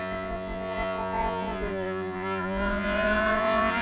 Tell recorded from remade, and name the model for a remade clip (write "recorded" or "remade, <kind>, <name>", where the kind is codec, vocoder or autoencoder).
remade, vocoder, Vocos